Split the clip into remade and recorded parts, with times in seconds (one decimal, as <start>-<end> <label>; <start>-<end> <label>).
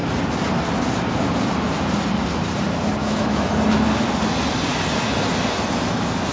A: 0.0-3.0 recorded; 3.0-3.5 remade; 3.5-6.3 recorded